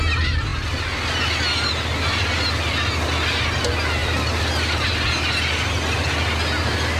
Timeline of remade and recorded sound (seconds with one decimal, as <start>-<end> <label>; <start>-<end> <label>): 0.0-7.0 recorded